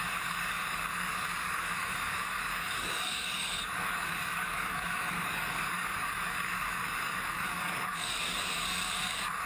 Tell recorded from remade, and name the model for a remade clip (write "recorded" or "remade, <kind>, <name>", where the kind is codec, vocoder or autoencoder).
remade, codec, DAC